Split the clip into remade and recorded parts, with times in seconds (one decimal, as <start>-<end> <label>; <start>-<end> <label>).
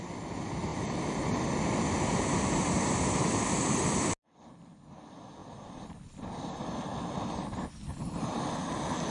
0.0-9.1 recorded